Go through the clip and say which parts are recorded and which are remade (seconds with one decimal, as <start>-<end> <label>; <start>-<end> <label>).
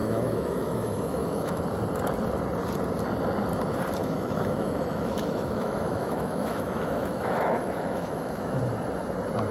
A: 0.0-1.6 remade; 1.6-4.0 recorded; 4.0-8.6 remade; 8.6-9.5 recorded